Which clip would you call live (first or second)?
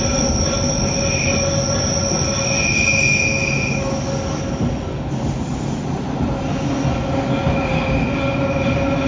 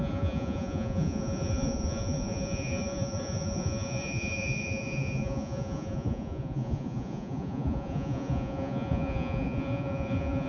first